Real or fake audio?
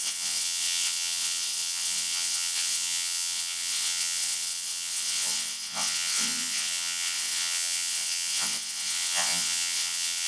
fake